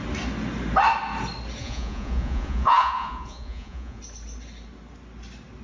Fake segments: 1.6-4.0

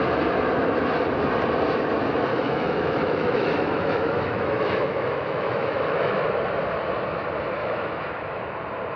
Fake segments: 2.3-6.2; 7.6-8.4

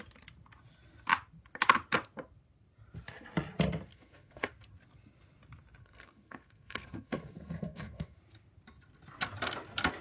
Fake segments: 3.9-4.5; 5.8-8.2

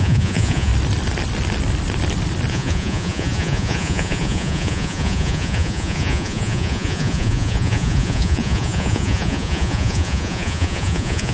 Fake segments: 0.0-0.7; 2.5-11.3

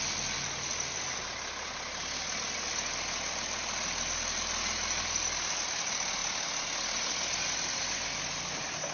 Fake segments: none

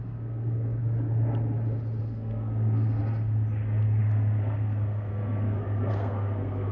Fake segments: 0.0-0.8; 2.0-3.0; 4.0-6.7